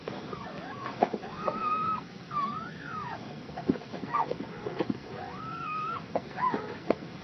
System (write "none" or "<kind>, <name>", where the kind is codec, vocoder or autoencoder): codec, SNAC